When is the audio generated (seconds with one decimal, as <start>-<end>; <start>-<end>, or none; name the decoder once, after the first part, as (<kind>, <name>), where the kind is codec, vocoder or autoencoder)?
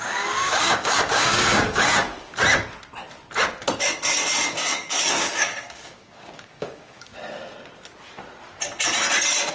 0.0-2.0 (codec, DAC); 4.4-7.1